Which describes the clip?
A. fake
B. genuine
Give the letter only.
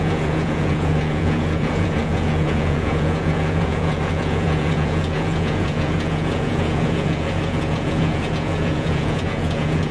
A